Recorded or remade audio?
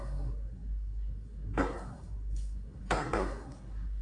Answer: remade